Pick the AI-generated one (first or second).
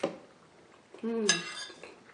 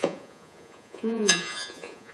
second